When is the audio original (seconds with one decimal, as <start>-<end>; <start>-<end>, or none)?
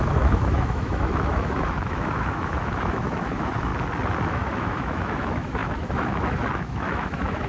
3.7-4.3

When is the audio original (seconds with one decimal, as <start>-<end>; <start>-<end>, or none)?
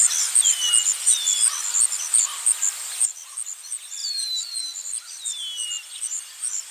0.0-6.7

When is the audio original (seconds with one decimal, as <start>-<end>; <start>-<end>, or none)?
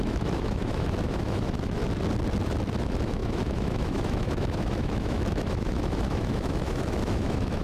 1.8-2.8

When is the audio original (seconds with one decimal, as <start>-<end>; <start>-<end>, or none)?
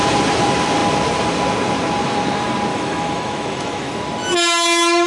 0.0-2.7; 4.0-5.1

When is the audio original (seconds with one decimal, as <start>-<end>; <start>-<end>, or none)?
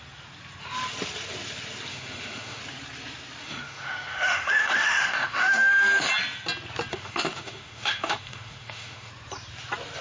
0.0-1.9; 2.6-3.4; 6.1-6.9; 9.1-10.0